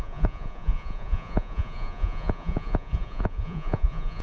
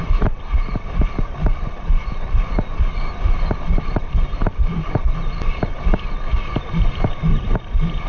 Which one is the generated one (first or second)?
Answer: first